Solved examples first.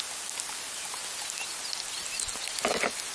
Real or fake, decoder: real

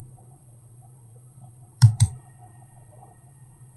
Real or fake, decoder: fake, vocoder, Vocos